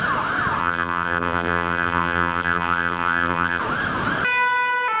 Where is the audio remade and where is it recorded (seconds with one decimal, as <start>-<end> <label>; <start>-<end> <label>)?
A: 0.0-0.6 recorded; 0.6-3.6 remade; 3.6-5.0 recorded